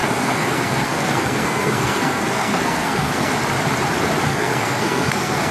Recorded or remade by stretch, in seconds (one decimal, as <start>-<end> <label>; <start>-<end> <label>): 0.0-3.3 remade; 3.3-4.3 recorded; 4.3-5.5 remade